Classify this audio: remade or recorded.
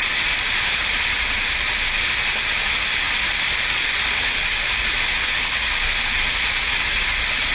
recorded